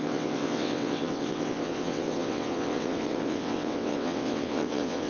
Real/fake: fake